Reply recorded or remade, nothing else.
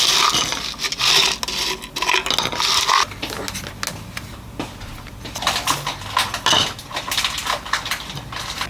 recorded